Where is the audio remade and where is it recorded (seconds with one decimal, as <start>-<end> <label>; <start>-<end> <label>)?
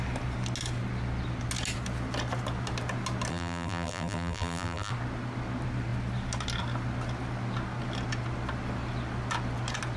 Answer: 0.0-3.3 recorded; 3.3-4.9 remade; 4.9-10.0 recorded